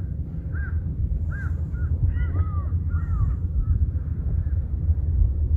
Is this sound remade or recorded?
remade